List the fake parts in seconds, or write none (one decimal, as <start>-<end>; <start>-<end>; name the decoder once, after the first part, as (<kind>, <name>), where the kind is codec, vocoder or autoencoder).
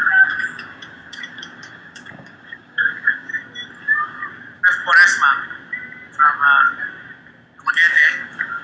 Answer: 0.0-3.3 (codec, DAC); 3.8-4.2; 7.7-8.6